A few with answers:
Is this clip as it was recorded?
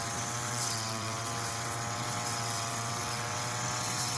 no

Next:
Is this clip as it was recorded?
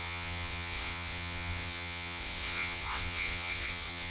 no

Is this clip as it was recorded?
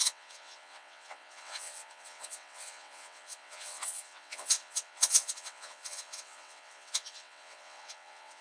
no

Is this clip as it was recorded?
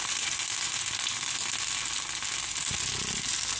yes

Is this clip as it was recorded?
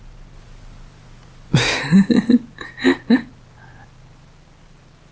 yes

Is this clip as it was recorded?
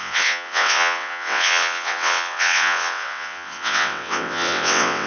no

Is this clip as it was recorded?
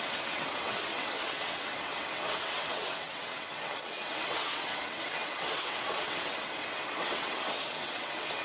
no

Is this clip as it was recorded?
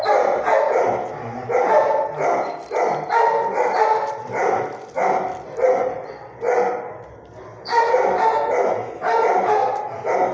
yes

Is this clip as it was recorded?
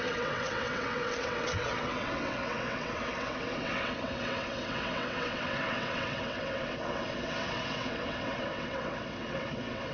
no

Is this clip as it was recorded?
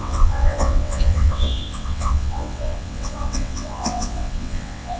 no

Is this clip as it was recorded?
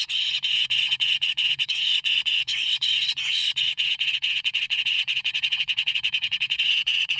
no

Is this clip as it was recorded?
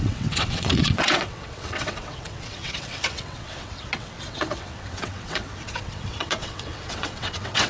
no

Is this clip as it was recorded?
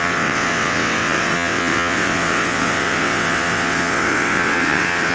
no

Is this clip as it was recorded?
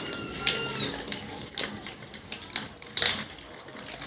yes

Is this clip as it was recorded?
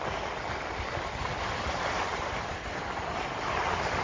yes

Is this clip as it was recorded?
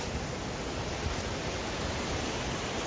yes